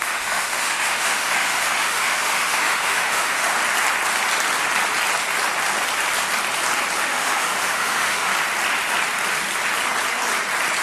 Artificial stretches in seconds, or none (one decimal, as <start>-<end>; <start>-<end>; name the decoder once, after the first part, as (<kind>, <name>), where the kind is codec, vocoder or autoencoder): 0.0-3.6 (autoencoder, DAC-VAE); 7.0-8.3

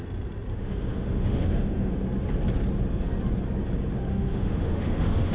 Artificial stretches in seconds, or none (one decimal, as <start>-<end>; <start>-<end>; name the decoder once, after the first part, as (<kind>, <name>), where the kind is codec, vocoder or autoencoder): 0.5-1.9 (autoencoder, DAC-VAE); 4.1-5.3

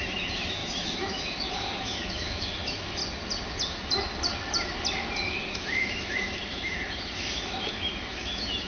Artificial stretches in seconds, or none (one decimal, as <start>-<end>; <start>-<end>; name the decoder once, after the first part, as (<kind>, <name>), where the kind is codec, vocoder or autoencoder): 0.0-3.0 (autoencoder, DAC-VAE); 5.5-8.7

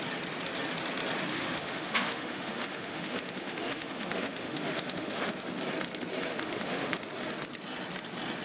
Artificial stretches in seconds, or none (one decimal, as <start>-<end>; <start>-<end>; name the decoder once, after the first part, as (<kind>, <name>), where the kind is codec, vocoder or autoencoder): 1.3-5.3 (autoencoder, DAC-VAE); 6.3-7.0

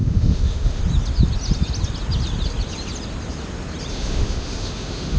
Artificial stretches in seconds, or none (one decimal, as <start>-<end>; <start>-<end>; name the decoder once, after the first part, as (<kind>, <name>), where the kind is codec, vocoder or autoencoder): 0.0-0.8 (autoencoder, DAC-VAE); 3.9-5.2

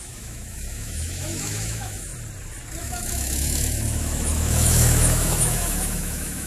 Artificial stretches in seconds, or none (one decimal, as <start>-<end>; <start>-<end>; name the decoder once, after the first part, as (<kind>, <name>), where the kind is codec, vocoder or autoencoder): 0.0-2.1 (autoencoder, DAC-VAE); 2.8-6.5

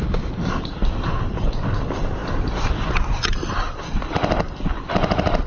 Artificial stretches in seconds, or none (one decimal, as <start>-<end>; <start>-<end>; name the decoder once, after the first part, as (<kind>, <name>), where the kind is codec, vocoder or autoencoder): none

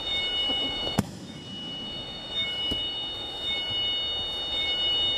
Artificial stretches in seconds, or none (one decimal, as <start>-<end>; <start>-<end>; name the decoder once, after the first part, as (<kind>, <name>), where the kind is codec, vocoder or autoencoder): 0.4-3.5 (autoencoder, DAC-VAE)